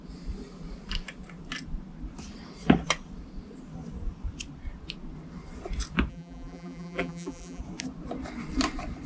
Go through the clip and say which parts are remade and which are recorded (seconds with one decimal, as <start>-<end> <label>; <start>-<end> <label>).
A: 0.0-6.1 recorded; 6.1-7.6 remade; 7.6-9.1 recorded